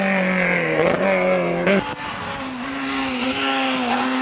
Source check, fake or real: real